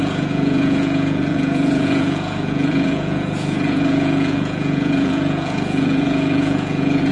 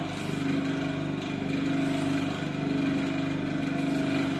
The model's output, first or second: first